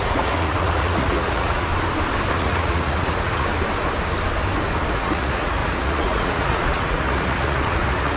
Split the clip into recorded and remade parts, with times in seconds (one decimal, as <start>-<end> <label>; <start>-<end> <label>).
0.0-1.7 remade; 1.7-2.3 recorded; 2.3-3.5 remade; 3.5-4.9 recorded; 4.9-8.2 remade